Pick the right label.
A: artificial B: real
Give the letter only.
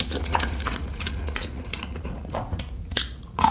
A